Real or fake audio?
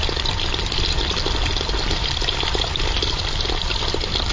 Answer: real